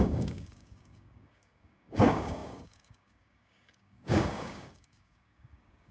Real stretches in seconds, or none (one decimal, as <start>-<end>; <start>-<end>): none

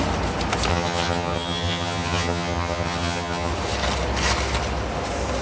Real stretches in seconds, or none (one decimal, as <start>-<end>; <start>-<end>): 0.0-0.7; 3.5-5.4

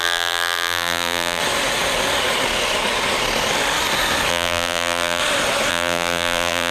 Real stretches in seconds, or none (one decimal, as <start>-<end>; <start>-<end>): 1.4-4.3; 5.2-5.7

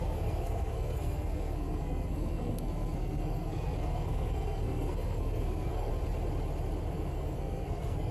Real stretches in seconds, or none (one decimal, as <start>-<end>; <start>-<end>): 5.9-6.9

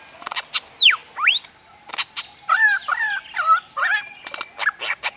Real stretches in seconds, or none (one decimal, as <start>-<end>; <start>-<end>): 0.0-5.2

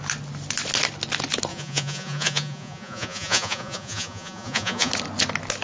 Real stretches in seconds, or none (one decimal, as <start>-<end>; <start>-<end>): 0.0-1.5; 4.9-5.6

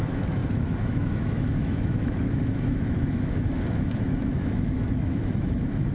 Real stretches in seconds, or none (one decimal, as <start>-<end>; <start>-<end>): none

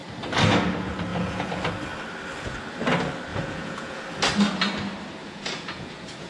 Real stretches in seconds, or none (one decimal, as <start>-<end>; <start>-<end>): 0.0-1.1; 1.7-3.3; 4.0-5.2